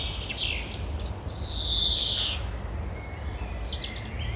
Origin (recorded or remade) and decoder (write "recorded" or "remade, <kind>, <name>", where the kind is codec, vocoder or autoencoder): recorded